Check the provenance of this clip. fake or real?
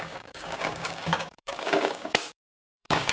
fake